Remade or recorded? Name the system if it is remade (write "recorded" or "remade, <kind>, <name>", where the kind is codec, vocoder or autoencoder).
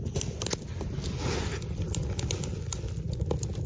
recorded